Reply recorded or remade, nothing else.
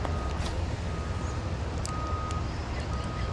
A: recorded